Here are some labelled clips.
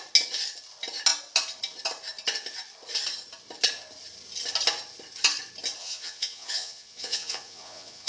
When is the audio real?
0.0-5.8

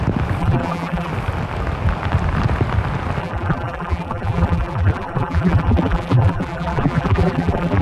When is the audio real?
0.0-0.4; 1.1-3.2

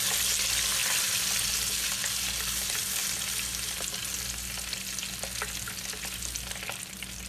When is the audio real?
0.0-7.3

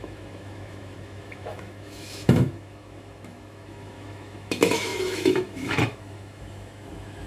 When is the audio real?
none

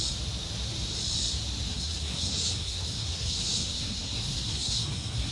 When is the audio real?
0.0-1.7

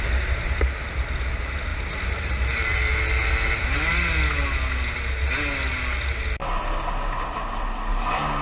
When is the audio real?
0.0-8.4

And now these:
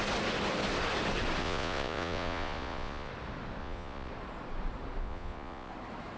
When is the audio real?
0.0-1.4; 3.1-3.6; 4.1-5.0; 5.7-6.2

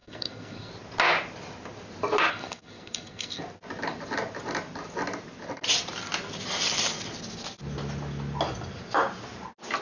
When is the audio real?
0.7-2.3; 3.4-9.8